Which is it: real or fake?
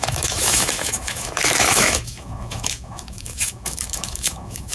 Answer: fake